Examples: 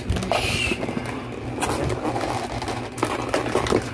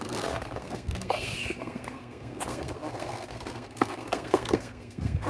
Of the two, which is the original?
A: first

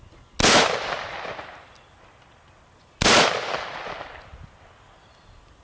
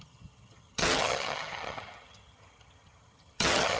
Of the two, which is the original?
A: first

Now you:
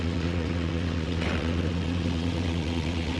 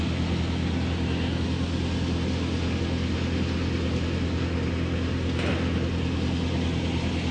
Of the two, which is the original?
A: second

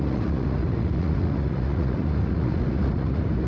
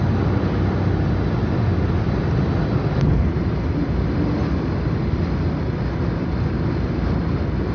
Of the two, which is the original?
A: second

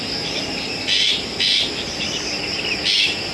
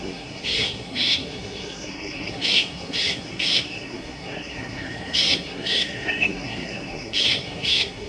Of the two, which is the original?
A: first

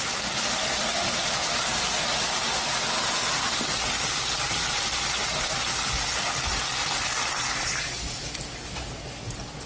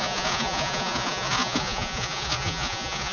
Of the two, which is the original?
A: first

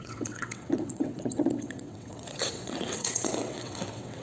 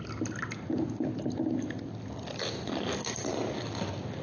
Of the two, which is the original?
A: second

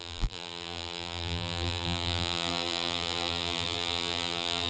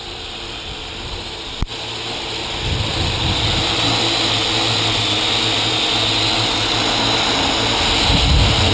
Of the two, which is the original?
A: second